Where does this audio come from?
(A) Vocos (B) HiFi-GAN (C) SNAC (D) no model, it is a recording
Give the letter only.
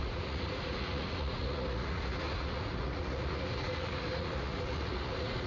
A